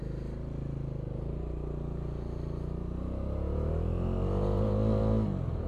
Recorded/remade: recorded